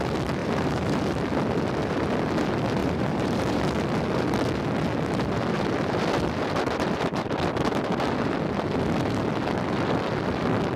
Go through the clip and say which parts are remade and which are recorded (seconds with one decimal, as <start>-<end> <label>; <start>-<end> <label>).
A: 0.0-0.4 recorded; 0.4-1.0 remade; 1.0-2.8 recorded; 2.8-3.6 remade; 3.6-10.8 recorded